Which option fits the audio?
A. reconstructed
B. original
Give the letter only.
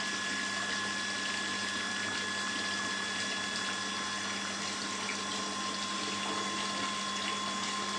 B